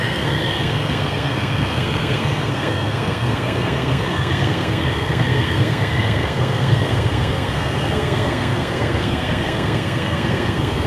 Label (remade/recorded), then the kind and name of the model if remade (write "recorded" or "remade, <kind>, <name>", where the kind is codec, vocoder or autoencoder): remade, codec, SNAC